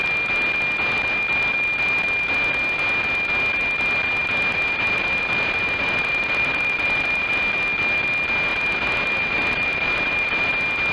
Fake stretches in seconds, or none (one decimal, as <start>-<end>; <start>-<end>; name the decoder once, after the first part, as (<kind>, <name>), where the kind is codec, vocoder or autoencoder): 4.2-7.4 (vocoder, BigVGAN v2); 8.5-10.5